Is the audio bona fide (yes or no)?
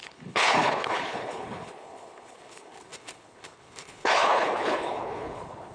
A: no